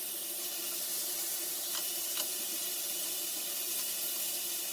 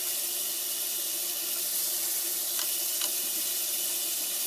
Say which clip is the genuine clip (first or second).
second